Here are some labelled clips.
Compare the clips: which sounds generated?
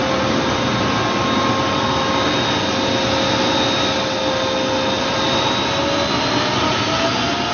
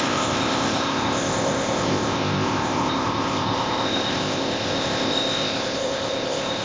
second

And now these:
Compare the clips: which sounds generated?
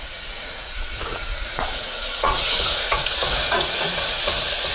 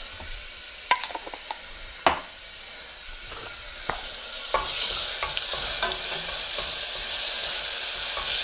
first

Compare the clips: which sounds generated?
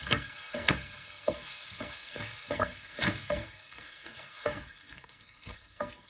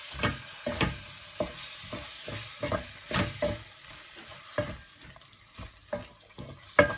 first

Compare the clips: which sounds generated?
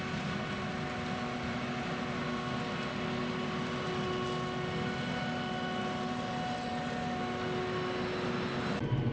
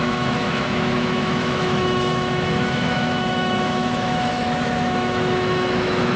second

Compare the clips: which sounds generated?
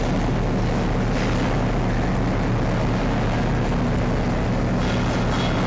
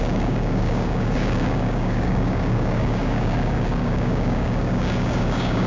second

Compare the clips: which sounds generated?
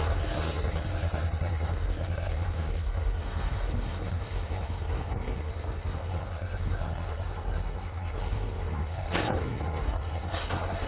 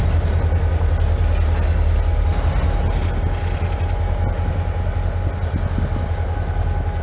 first